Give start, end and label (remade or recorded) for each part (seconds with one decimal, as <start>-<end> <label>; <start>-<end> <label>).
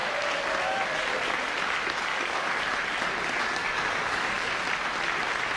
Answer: 0.0-2.1 recorded; 2.1-2.6 remade; 2.6-3.6 recorded; 3.6-4.5 remade; 4.5-5.6 recorded